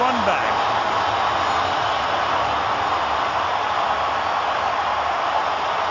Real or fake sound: real